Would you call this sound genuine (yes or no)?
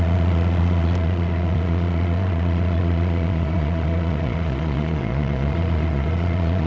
no